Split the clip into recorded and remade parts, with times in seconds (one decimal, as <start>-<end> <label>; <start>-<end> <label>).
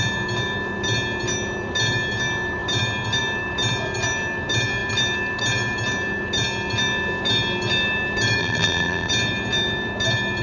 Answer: 0.0-8.4 recorded; 8.4-9.1 remade; 9.1-10.4 recorded